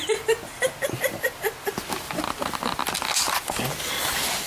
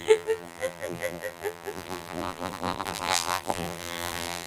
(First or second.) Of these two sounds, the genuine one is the first